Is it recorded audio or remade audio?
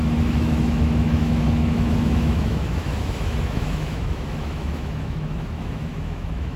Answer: remade